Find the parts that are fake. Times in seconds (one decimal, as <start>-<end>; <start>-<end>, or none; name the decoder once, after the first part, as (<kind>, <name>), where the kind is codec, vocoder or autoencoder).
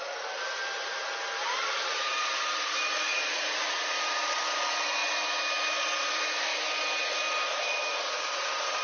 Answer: 0.0-5.0 (vocoder, BigVGAN v2); 5.6-6.5; 7.2-8.8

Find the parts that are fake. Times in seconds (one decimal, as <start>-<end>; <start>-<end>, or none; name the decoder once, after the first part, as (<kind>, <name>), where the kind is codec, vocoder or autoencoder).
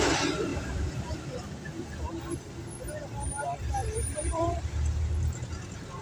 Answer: 0.5-1.5 (vocoder, BigVGAN v2); 3.8-4.6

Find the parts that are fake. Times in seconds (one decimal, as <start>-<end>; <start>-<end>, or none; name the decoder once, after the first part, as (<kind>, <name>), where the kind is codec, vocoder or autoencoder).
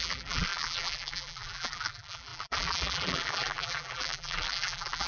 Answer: 0.0-5.1 (vocoder, BigVGAN v2)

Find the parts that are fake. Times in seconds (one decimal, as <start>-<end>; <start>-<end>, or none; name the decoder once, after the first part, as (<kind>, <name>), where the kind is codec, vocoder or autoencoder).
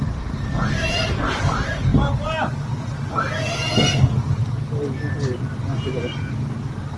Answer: 0.0-1.9 (vocoder, BigVGAN v2); 6.1-7.0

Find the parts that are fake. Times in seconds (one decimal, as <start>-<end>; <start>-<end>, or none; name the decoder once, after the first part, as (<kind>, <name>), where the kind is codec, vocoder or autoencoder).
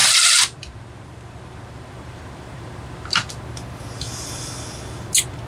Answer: 0.0-3.3 (vocoder, BigVGAN v2)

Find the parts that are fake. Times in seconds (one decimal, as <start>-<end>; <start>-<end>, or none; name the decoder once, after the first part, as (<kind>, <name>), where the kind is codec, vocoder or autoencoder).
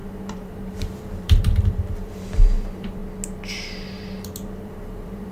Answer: 0.0-3.0 (vocoder, BigVGAN v2); 4.6-5.3